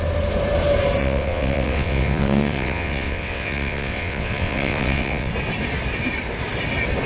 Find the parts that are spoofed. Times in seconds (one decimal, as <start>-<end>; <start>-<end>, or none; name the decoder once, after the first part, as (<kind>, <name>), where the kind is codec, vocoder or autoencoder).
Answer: 1.0-5.3 (vocoder, WaveNeXt)